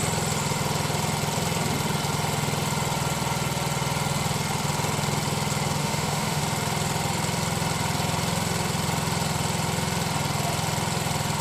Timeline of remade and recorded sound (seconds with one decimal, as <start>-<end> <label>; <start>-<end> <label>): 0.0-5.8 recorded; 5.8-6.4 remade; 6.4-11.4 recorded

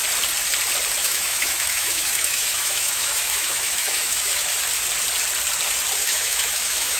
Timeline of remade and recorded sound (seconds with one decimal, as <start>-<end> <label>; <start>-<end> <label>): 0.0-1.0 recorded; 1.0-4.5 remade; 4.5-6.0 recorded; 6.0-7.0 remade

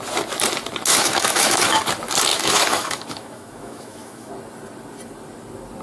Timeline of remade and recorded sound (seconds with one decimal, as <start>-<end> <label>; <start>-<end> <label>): 0.0-0.9 recorded; 0.9-1.8 remade; 1.8-2.3 recorded; 2.3-4.3 remade; 4.3-5.8 recorded

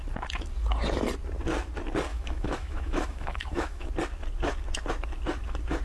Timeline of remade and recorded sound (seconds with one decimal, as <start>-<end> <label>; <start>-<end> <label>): 0.0-2.1 recorded; 2.1-3.9 remade; 3.9-5.8 recorded